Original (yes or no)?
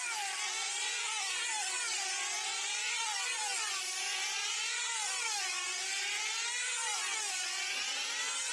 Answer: yes